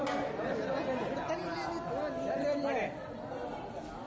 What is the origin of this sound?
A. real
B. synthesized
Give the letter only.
A